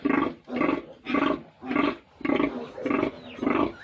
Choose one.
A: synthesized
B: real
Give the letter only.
B